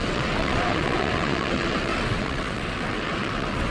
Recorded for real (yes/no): no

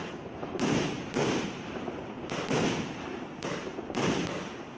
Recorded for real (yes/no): no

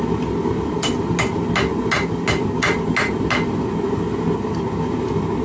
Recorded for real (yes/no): yes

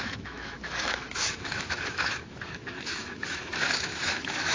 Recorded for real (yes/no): no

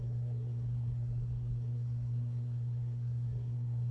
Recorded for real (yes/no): no